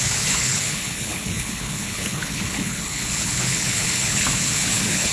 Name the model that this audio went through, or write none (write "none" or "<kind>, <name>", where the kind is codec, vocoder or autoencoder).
codec, HILCodec